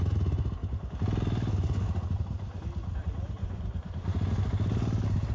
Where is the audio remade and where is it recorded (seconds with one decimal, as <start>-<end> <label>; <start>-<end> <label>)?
0.0-3.4 recorded; 3.4-4.3 remade; 4.3-5.3 recorded